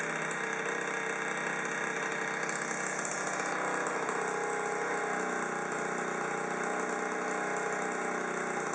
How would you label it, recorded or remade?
recorded